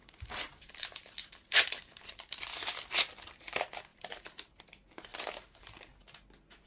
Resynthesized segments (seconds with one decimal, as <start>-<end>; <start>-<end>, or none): 0.0-2.4; 3.9-4.6; 5.1-5.8